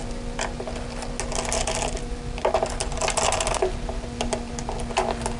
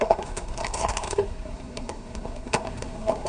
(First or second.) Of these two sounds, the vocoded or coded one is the second